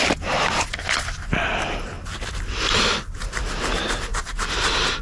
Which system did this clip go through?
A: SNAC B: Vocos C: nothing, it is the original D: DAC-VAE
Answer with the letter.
C